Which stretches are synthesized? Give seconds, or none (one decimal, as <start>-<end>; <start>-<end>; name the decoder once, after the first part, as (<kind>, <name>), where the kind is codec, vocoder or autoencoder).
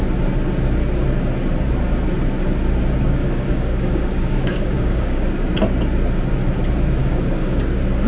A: 3.2-5.3 (codec, DAC); 7.0-7.6